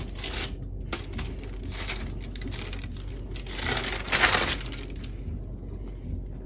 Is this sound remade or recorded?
recorded